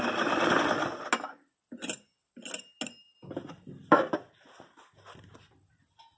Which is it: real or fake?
real